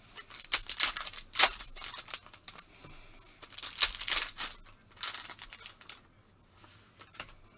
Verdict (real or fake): real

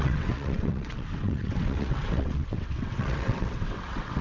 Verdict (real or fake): fake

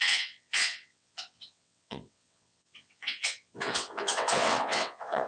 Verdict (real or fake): fake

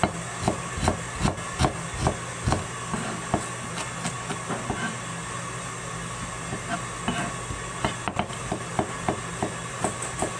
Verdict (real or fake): real